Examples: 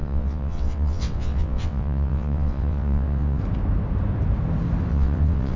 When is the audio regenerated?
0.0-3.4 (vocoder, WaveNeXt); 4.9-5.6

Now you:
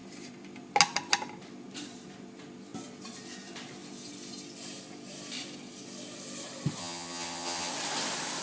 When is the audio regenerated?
6.8-7.7 (vocoder, HiFi-GAN)

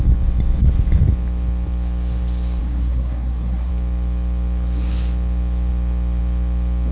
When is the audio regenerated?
2.6-3.7 (codec, SNAC)

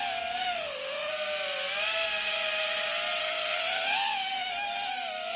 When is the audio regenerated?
0.4-1.1 (autoencoder, DAC-VAE); 3.2-4.9

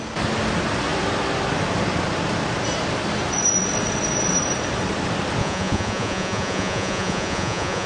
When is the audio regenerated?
5.4-7.9 (vocoder, Vocos)